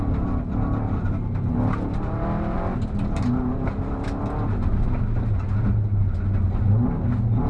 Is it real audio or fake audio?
real